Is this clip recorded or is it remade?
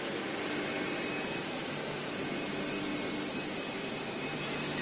recorded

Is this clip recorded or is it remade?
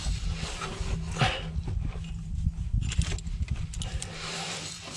recorded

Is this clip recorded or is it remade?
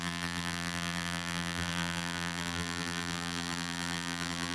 remade